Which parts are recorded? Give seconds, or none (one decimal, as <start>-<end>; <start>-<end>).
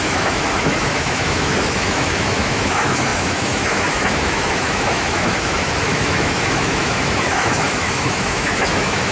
none